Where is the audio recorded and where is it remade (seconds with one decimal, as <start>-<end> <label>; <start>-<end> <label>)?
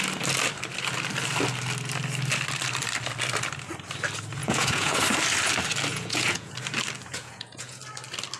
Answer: 0.0-4.4 recorded; 4.4-5.0 remade; 5.0-5.9 recorded; 5.9-6.5 remade; 6.5-7.1 recorded; 7.1-7.8 remade; 7.8-8.4 recorded